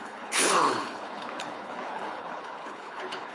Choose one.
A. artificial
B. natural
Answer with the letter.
A